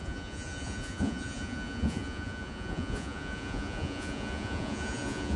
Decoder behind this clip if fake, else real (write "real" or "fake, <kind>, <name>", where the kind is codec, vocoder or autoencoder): fake, vocoder, Vocos